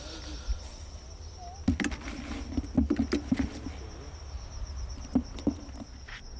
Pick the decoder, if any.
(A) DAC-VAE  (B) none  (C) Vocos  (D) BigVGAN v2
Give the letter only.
B